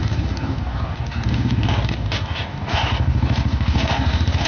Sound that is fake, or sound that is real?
fake